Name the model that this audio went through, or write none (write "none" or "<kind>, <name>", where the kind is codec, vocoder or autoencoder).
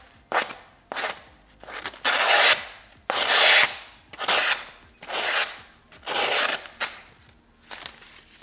none